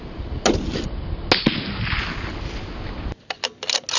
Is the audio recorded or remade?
recorded